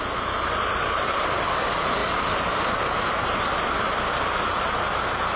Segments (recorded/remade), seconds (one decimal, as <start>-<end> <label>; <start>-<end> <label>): 0.0-5.4 recorded